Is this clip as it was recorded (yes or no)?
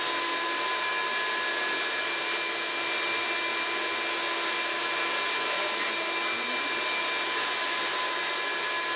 yes